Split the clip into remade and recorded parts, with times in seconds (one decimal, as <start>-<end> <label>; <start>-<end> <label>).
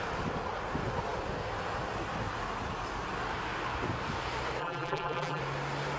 0.0-4.6 recorded; 4.6-5.4 remade; 5.4-6.0 recorded